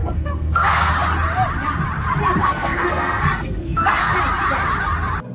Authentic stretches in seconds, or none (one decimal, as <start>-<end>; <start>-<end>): 0.9-2.4; 4.1-5.3